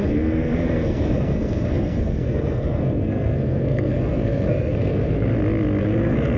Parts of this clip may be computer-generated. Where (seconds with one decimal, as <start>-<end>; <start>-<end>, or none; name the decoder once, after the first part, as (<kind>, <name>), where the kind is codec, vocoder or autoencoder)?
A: 0.0-5.3 (codec, SNAC); 5.8-6.4